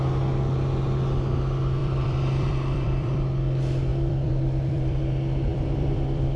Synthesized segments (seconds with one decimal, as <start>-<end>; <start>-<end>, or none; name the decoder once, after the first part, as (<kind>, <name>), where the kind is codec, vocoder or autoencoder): 1.8-3.2 (vocoder, BigVGAN v2); 3.9-5.0; 5.5-6.4